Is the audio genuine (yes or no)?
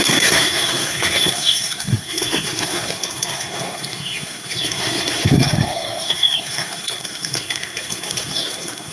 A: no